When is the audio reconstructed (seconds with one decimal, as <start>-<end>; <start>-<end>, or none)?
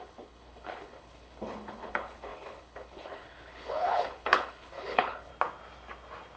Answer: 0.0-5.3